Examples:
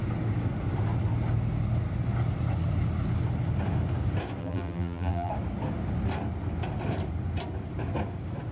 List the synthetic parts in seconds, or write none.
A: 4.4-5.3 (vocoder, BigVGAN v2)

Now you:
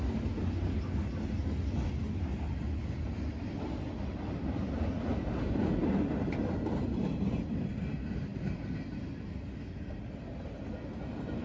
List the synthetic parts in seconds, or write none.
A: none

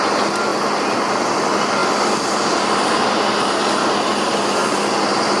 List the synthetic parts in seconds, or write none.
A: none

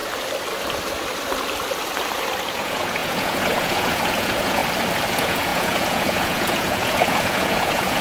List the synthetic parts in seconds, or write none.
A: 2.5-4.6 (vocoder, Vocos); 5.1-8.0

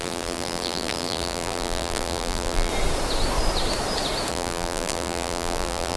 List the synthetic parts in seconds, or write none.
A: 0.0-2.7 (vocoder, BigVGAN v2); 4.3-6.0

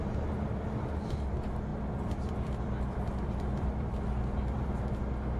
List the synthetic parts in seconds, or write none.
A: 1.7-4.9 (vocoder, BigVGAN v2)